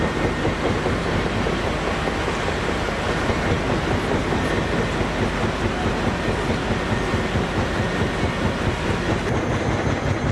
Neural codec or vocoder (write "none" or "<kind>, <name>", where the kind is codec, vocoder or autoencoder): none